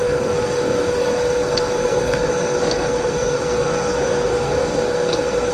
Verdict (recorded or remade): remade